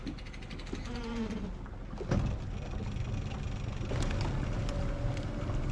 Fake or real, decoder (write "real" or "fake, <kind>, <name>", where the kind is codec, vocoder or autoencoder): real